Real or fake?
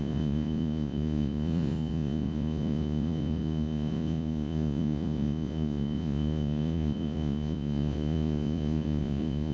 fake